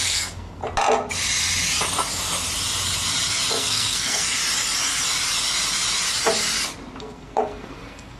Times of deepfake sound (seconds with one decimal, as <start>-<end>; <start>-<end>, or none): 0.0-0.6; 3.5-4.4; 7.0-8.2